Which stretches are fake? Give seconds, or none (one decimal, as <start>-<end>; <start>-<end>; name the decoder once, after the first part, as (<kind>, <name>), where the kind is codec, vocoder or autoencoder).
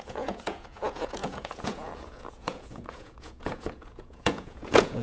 0.0-5.0 (vocoder, Vocos)